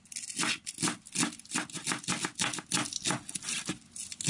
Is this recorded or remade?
recorded